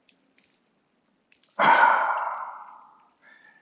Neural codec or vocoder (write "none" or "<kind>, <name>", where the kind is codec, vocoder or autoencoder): none